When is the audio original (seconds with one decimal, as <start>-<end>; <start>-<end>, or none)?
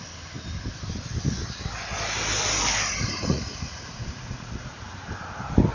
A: 0.0-3.0; 4.7-5.7